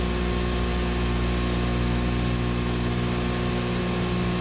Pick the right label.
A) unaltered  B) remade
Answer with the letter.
A